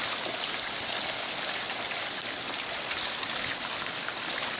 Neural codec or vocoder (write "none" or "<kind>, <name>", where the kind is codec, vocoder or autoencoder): none